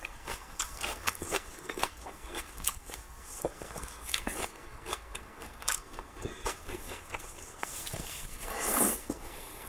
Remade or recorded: remade